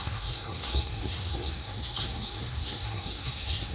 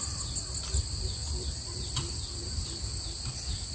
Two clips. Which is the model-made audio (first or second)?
first